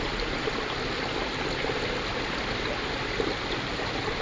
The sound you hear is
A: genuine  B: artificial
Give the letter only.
A